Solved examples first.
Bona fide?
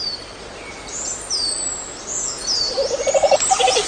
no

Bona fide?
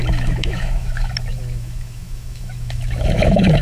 no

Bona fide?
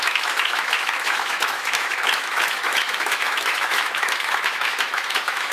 no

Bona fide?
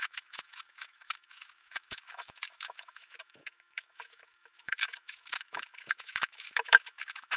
no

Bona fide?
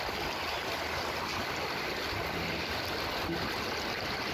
yes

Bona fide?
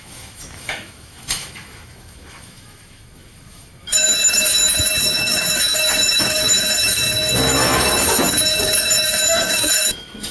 no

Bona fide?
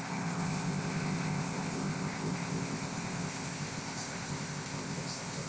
no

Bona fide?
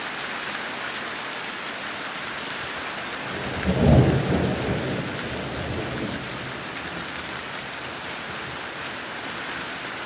yes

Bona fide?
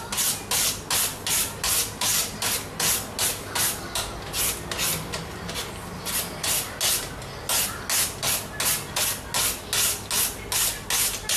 yes